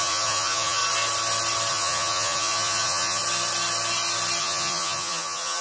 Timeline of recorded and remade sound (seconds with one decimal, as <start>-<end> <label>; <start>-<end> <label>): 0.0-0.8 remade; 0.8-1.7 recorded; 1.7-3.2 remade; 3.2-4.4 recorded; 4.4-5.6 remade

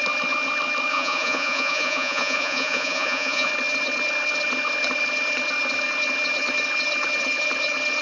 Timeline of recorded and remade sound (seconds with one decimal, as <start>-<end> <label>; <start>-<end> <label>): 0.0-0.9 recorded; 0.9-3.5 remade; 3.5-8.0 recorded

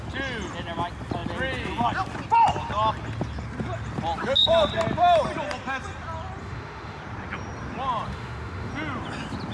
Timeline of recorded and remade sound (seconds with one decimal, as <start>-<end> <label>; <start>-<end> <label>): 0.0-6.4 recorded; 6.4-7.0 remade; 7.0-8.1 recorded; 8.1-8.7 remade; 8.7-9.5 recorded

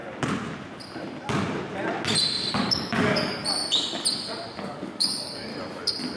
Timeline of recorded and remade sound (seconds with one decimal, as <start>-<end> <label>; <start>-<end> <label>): 0.0-2.5 recorded; 2.5-3.4 remade; 3.4-4.6 recorded; 4.6-5.5 remade; 5.5-6.2 recorded

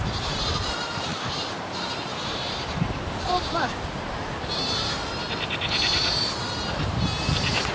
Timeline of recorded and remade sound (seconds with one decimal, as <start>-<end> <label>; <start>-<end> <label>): 0.0-7.7 remade

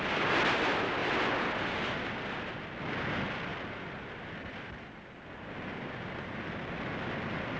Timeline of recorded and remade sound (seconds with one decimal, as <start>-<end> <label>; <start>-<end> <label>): 0.0-7.6 remade

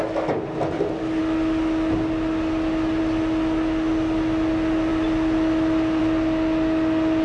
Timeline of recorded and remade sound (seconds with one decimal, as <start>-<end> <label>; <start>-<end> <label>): 0.0-7.2 recorded

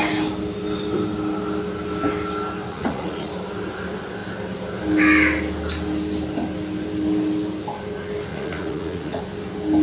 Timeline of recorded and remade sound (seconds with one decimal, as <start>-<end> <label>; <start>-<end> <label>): 0.0-2.7 recorded; 2.7-3.3 remade; 3.3-8.3 recorded; 8.3-9.2 remade; 9.2-9.8 recorded